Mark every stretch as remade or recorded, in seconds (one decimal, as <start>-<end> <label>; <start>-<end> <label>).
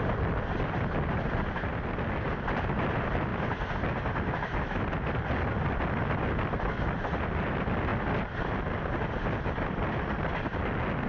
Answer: 0.0-11.1 recorded